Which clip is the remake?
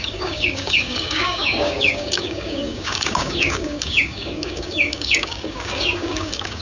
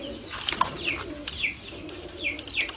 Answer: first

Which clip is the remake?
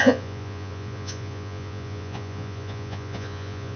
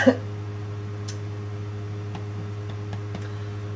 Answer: first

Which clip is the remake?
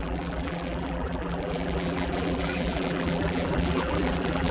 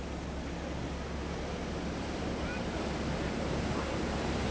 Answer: first